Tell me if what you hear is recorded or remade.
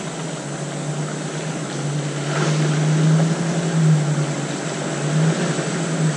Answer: recorded